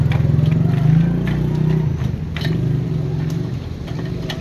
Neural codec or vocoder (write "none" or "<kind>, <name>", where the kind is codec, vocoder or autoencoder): none